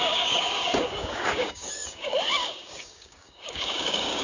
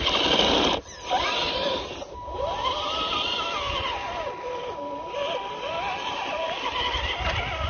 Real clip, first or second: second